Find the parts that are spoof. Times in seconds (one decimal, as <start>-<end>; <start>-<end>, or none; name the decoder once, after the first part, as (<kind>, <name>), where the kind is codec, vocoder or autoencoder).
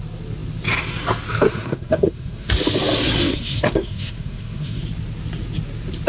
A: 1.5-2.5 (codec, SNAC); 3.2-4.8